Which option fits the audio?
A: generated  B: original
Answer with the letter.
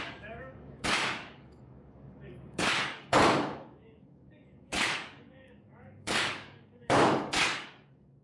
A